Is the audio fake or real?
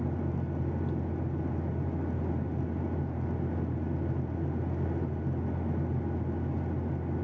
real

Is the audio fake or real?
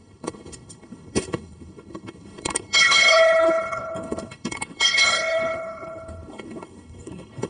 fake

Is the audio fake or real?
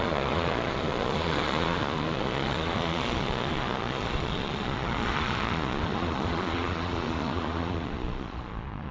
fake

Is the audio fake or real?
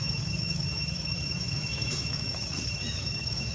fake